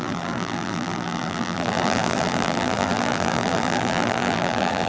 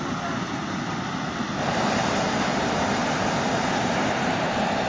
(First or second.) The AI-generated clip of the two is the first